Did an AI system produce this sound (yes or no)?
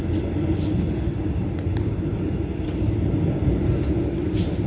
no